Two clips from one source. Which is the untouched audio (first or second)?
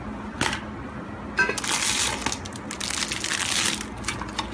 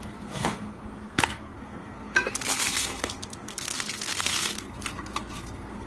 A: first